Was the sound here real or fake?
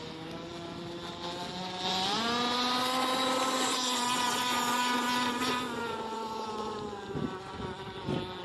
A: real